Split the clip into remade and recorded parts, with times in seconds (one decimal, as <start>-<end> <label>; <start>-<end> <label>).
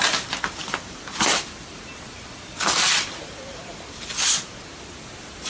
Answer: 0.0-5.5 recorded